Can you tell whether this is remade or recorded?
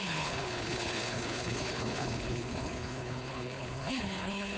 remade